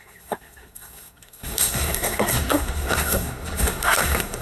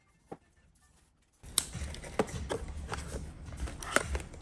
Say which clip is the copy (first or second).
first